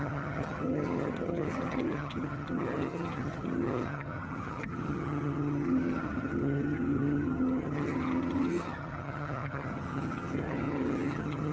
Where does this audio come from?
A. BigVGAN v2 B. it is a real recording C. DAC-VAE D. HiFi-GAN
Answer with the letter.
D